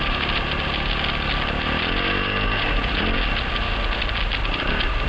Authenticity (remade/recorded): recorded